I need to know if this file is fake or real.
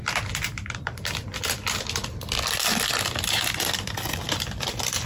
real